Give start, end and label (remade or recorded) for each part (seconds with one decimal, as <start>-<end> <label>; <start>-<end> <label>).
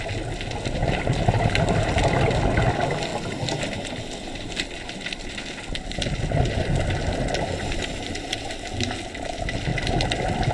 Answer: 0.0-10.5 recorded